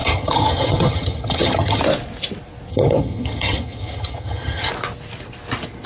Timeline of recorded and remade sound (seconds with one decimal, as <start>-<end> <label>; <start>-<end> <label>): 0.0-1.8 remade; 1.8-2.7 recorded; 2.7-4.7 remade; 4.7-5.9 recorded